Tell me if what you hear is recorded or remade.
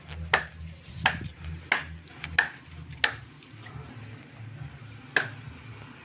recorded